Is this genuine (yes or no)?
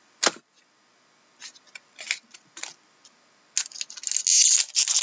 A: yes